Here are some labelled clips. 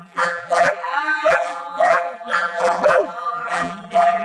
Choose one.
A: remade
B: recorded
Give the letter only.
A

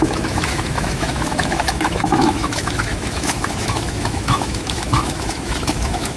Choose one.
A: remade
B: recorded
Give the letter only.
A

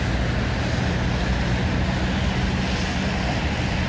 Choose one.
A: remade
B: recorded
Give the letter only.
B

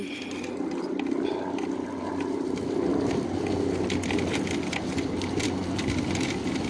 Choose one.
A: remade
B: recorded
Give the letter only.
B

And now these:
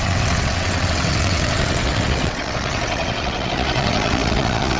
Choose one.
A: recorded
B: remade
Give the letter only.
B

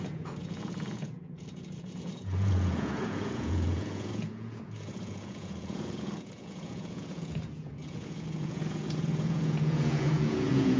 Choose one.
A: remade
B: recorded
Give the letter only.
A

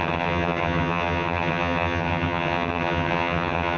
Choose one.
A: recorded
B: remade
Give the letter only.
B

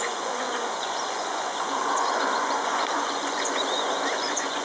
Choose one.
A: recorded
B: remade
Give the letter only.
B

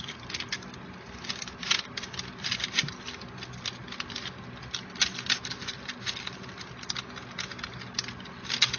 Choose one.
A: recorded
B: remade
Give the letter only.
A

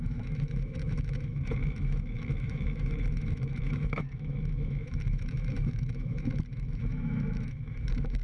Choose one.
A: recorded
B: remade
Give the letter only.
B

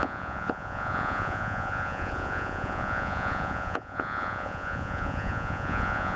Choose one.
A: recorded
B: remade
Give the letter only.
B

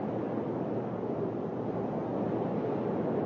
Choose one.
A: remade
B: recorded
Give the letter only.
B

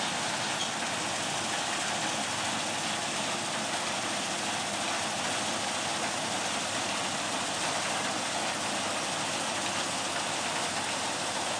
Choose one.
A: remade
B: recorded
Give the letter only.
B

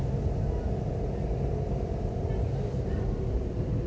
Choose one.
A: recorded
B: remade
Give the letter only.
A